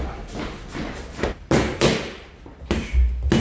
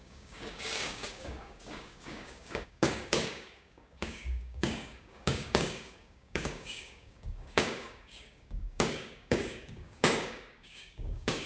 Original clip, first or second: first